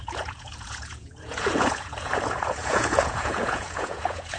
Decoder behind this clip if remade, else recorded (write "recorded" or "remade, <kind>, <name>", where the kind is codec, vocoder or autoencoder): remade, vocoder, Vocos